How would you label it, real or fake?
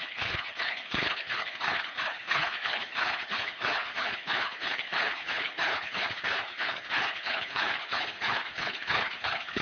fake